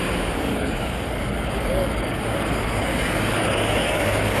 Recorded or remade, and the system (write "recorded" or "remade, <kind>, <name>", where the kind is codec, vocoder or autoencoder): remade, codec, DAC